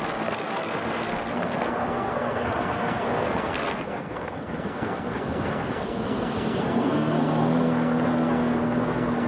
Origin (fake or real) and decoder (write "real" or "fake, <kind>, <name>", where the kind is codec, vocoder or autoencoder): fake, codec, SNAC